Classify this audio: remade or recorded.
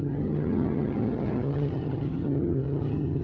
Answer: remade